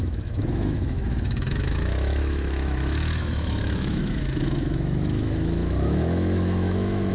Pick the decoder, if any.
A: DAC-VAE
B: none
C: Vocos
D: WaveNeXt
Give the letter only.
A